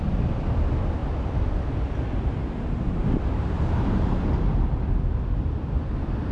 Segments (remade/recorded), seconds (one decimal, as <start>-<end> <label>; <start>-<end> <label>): 0.0-6.3 recorded